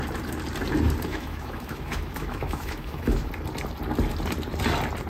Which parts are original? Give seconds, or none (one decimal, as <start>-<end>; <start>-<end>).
0.0-1.1; 3.3-5.1